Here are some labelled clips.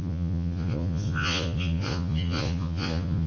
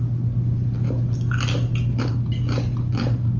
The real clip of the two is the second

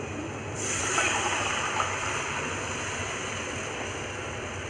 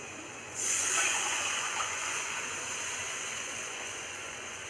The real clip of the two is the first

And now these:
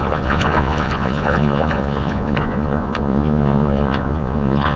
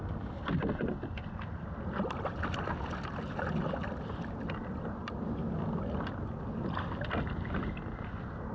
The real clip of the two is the second